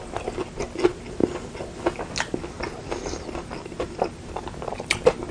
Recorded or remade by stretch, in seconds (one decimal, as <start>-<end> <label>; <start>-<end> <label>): 0.0-5.3 recorded